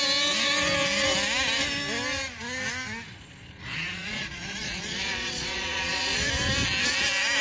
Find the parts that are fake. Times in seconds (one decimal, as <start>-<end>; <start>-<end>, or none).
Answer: 3.1-6.3

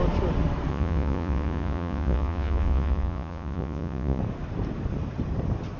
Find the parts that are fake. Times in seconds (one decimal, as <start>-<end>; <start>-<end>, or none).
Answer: 0.7-4.2

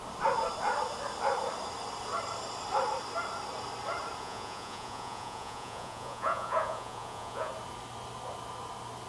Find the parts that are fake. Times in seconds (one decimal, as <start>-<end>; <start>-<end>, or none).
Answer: 4.2-7.5

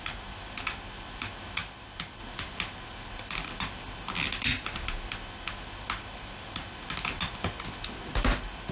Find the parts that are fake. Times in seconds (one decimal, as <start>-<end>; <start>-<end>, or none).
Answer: none